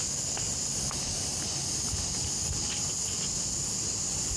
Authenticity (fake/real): real